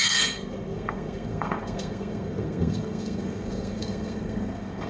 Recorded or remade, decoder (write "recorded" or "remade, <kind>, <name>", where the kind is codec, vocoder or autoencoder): remade, codec, SNAC